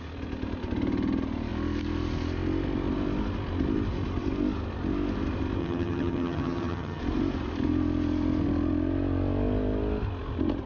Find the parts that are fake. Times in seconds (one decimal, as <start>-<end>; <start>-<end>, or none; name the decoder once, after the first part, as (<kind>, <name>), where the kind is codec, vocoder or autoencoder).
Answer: 5.6-7.0 (vocoder, HiFi-GAN)